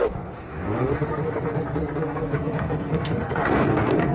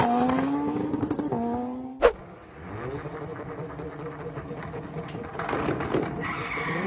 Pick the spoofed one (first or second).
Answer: first